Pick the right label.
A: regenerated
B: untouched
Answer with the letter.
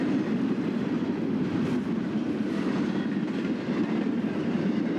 B